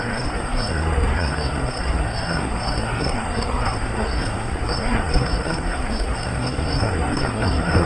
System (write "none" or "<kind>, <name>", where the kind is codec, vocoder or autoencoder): codec, SNAC